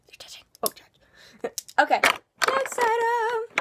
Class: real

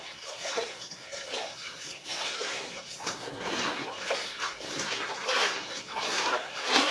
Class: fake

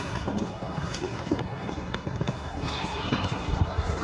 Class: fake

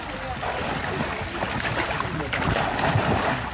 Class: real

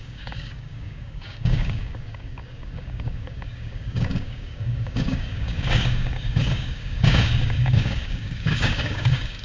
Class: fake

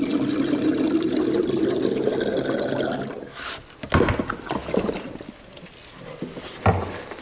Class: real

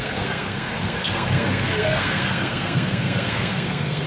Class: fake